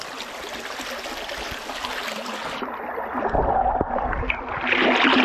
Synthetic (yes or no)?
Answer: no